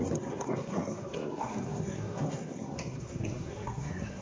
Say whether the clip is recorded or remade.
remade